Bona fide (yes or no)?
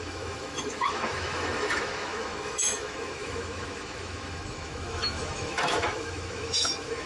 no